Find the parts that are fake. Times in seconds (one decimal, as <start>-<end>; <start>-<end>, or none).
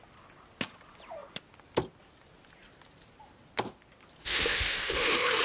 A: 4.2-5.4